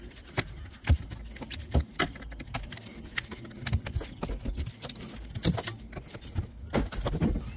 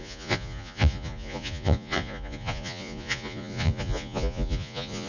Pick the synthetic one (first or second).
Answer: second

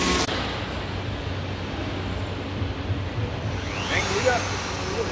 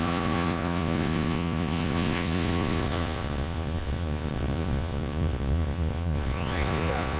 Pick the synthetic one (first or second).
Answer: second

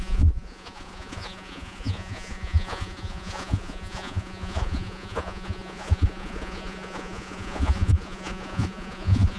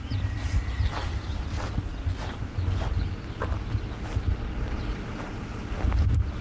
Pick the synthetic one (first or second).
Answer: first